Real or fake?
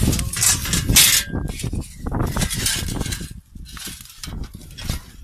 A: real